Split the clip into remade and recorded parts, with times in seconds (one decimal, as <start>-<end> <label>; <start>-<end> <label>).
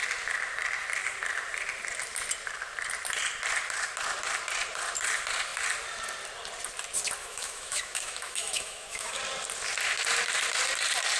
0.0-7.2 recorded; 7.2-9.2 remade; 9.2-11.2 recorded